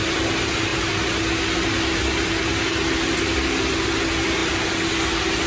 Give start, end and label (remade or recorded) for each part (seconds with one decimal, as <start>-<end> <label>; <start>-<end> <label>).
0.0-5.5 recorded